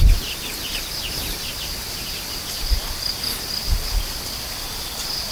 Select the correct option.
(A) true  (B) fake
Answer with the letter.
A